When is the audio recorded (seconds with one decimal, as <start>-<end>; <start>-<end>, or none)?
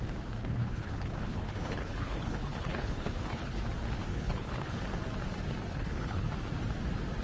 0.0-0.4; 3.6-4.1; 4.8-5.6; 6.3-7.2